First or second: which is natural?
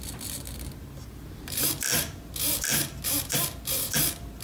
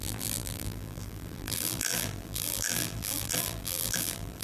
first